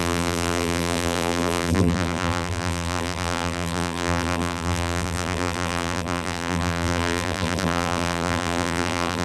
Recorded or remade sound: remade